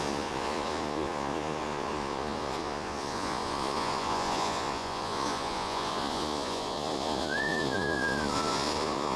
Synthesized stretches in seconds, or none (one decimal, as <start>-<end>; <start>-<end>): 0.0-9.2